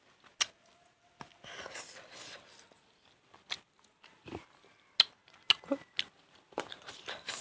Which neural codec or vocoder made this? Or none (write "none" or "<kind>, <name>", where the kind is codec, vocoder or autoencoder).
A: none